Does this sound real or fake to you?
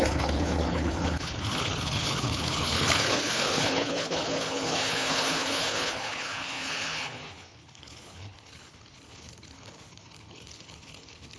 fake